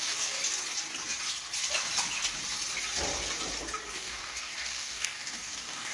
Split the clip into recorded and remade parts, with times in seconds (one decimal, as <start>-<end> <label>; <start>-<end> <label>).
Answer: 0.0-0.4 remade; 0.4-3.9 recorded; 3.9-5.9 remade